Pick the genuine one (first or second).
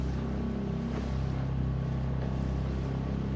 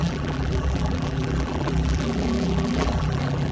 first